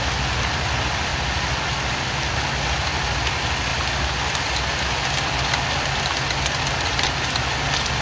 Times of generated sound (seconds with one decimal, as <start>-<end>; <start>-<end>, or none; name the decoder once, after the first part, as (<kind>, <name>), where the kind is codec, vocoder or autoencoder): none